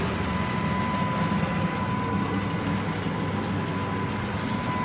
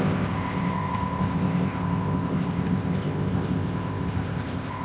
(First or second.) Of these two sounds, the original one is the first